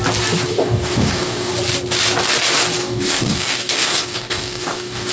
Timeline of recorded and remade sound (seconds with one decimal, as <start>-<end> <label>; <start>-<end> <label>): 0.0-0.5 recorded; 0.5-1.5 remade; 1.5-2.8 recorded; 2.8-5.1 remade